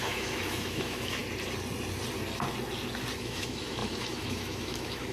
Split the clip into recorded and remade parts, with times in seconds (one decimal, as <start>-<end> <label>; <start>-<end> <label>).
0.0-1.2 remade; 1.2-3.2 recorded; 3.2-5.1 remade